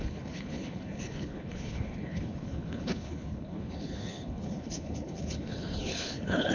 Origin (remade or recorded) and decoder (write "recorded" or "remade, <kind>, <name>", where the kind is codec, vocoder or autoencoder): remade, codec, HILCodec